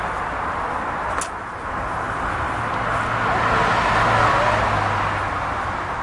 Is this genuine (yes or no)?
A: yes